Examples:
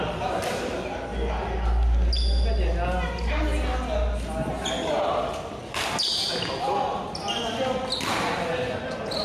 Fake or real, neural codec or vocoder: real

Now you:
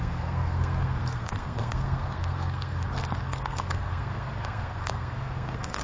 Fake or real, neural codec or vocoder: fake, codec, SNAC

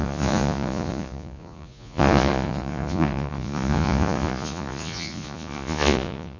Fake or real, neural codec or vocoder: fake, vocoder, Vocos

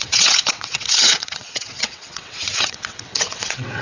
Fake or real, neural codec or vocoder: fake, vocoder, WaveNeXt